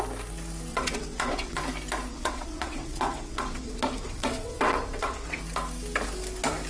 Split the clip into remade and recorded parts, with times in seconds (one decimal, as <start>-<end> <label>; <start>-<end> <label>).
0.0-0.7 recorded; 0.7-1.6 remade; 1.6-2.1 recorded; 2.1-5.4 remade; 5.4-6.7 recorded